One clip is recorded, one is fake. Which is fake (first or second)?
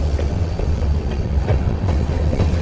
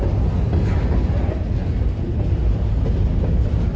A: first